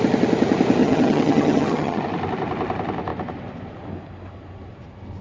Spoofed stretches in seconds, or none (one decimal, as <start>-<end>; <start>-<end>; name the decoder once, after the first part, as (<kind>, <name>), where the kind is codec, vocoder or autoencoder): 0.8-2.0 (vocoder, HiFi-GAN)